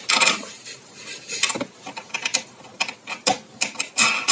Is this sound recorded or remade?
recorded